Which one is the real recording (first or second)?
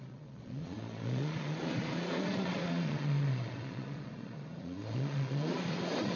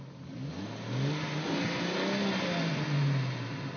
second